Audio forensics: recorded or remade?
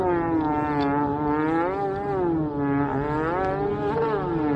recorded